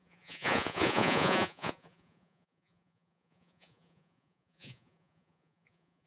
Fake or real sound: fake